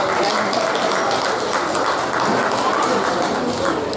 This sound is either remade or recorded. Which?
recorded